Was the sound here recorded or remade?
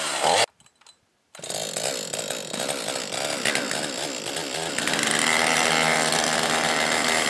recorded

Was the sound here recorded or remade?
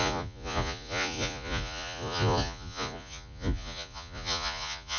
remade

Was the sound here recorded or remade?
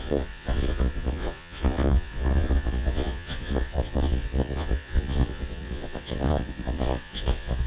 remade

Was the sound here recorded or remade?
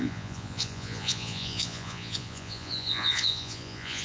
remade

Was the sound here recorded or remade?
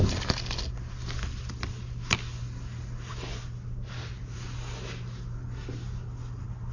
recorded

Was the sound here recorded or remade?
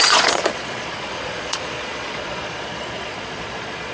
remade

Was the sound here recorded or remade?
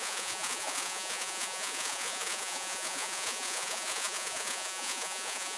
remade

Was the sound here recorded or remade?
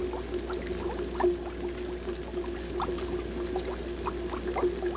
recorded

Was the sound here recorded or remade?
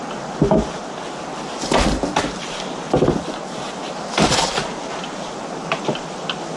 recorded